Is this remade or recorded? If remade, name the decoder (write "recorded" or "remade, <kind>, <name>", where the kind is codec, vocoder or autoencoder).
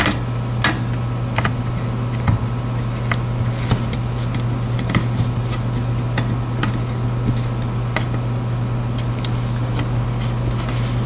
recorded